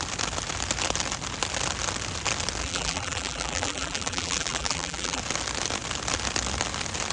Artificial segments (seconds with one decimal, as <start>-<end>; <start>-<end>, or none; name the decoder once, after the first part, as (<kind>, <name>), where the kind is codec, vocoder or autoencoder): 2.6-5.2 (vocoder, BigVGAN v2)